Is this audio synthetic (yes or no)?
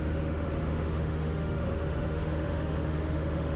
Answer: yes